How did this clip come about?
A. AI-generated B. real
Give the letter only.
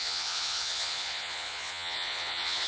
A